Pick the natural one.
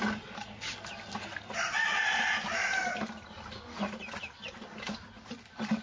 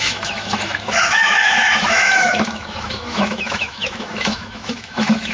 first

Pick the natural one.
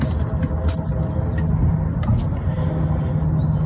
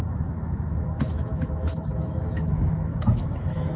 first